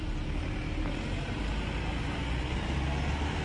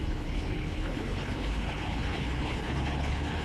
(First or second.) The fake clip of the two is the second